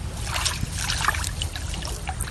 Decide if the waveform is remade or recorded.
recorded